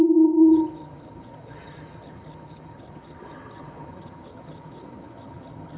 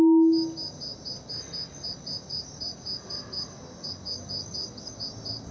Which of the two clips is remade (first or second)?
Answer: first